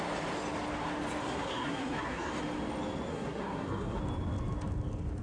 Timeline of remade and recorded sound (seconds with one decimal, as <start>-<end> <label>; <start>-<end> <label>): 0.0-1.2 recorded; 1.2-2.3 remade; 2.3-3.1 recorded; 3.1-4.0 remade; 4.0-5.2 recorded